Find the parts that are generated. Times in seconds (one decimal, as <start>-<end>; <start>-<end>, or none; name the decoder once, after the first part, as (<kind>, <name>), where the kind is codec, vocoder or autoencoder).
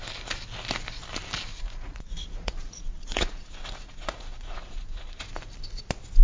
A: 1.5-5.2 (vocoder, Vocos)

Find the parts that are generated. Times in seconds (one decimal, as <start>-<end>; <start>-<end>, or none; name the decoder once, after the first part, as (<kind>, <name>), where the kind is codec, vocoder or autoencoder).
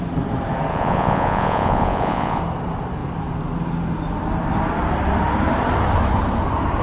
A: 0.7-2.4 (vocoder, Vocos)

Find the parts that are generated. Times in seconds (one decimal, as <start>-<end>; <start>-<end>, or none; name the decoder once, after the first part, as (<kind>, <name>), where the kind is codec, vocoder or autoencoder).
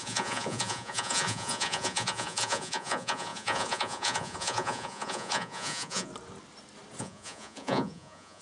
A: 0.0-6.1 (vocoder, Vocos); 7.0-8.4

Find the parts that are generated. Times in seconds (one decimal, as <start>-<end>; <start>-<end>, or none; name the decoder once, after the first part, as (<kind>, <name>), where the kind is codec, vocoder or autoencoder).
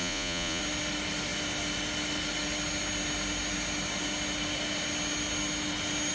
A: 0.0-0.6 (vocoder, Vocos)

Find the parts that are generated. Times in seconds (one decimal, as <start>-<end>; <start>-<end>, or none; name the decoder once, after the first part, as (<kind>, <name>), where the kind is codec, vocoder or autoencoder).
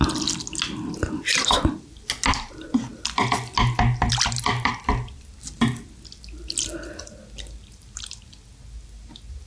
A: none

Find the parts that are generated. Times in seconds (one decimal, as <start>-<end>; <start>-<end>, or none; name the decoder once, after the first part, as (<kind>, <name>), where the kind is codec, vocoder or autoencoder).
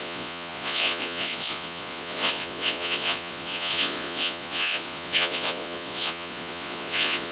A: 0.0-7.3 (vocoder, Vocos)